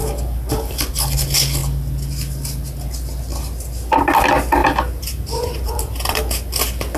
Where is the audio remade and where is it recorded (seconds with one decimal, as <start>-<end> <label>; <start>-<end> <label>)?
0.0-4.6 recorded; 4.6-6.2 remade; 6.2-7.0 recorded